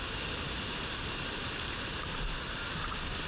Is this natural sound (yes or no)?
yes